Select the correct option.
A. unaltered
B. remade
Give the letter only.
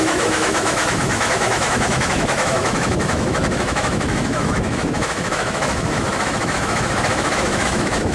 B